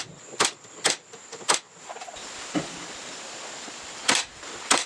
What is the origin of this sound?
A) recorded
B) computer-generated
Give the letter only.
A